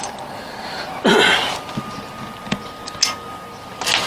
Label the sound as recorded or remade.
recorded